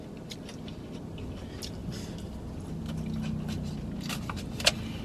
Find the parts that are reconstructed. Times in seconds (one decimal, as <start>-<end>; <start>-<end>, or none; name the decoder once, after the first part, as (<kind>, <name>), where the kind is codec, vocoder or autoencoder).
none

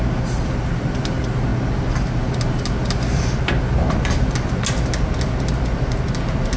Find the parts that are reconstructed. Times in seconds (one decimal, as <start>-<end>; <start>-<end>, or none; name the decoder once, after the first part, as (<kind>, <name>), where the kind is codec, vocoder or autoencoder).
none

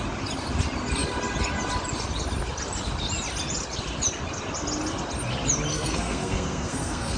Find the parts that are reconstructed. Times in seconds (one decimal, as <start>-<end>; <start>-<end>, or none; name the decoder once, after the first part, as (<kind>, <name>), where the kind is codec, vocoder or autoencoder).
5.7-7.2 (codec, SNAC)

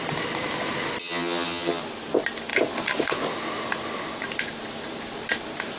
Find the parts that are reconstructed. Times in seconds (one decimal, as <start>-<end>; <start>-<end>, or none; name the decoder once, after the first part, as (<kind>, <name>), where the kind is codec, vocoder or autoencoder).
1.0-1.8 (vocoder, HiFi-GAN)